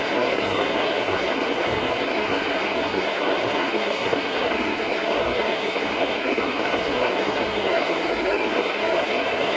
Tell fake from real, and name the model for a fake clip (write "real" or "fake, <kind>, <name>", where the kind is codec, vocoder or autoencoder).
fake, codec, SNAC